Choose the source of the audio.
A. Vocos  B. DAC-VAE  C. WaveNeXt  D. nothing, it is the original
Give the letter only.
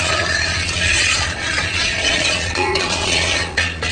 A